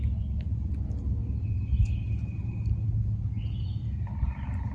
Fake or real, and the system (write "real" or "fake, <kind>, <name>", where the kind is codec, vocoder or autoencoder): real